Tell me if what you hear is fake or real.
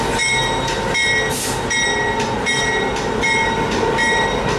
real